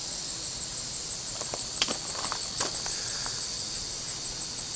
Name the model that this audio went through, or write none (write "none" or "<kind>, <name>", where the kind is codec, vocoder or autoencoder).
vocoder, BigVGAN v2